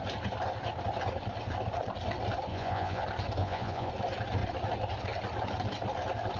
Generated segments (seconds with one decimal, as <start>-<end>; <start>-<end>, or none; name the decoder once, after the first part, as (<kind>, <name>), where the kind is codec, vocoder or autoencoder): 2.5-3.0 (vocoder, Vocos); 3.4-3.9

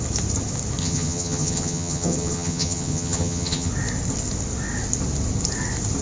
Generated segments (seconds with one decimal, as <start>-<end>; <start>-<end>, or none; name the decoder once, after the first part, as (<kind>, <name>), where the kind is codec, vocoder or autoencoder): 0.8-3.7 (vocoder, HiFi-GAN)

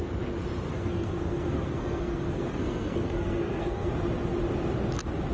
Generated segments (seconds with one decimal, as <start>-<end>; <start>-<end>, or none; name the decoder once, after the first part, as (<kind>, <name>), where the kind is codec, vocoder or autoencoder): 0.7-3.9 (codec, SNAC)

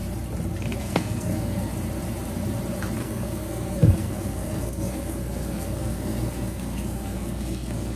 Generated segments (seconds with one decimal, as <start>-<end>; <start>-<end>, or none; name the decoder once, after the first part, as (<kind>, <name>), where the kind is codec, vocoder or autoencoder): 0.8-1.7 (codec, SNAC); 3.0-8.0

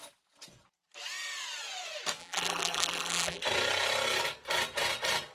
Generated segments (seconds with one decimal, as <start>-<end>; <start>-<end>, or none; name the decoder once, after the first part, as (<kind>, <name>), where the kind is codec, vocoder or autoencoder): 2.2-3.4 (vocoder, BigVGAN v2)